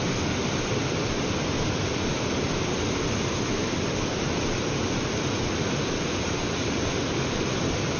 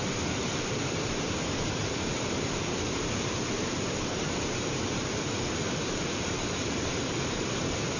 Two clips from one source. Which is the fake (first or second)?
second